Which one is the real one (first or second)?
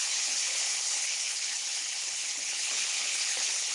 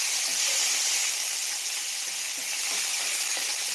second